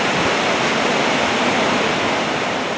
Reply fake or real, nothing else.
real